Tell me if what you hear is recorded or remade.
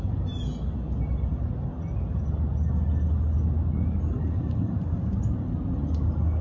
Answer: recorded